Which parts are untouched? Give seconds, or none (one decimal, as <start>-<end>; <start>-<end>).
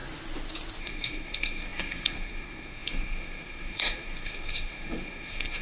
0.0-0.8